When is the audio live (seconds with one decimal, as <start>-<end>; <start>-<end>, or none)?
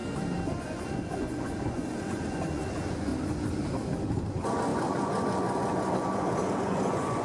0.0-0.6; 3.1-4.3